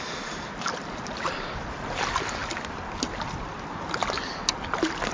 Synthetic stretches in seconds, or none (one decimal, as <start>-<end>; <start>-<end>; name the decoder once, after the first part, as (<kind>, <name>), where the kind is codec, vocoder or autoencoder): none